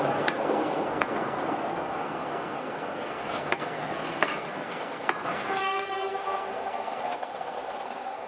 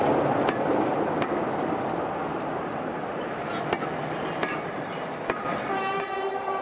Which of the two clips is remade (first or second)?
first